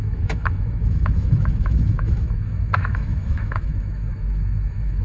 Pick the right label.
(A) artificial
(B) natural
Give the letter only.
A